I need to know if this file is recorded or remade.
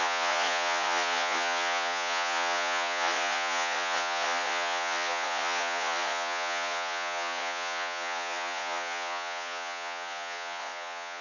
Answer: remade